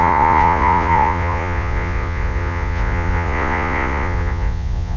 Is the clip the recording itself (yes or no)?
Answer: no